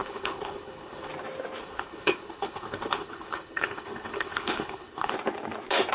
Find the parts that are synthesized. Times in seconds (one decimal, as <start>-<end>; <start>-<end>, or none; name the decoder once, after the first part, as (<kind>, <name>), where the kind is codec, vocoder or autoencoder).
0.0-1.1 (codec, HILCodec); 1.6-5.1